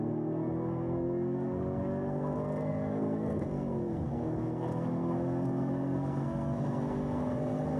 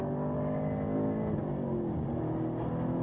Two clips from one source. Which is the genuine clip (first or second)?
second